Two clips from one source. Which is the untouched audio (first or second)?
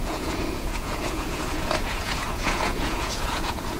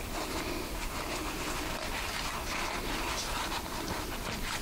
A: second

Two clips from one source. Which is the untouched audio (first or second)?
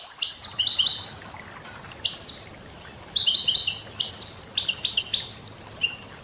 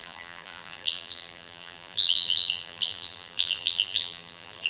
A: first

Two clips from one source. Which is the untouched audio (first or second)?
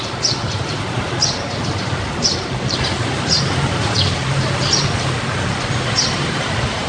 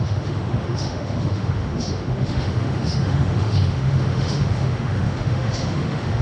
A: first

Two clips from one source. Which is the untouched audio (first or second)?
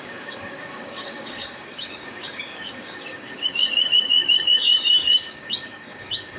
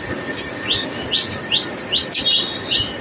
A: second